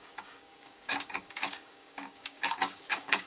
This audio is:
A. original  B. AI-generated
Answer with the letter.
B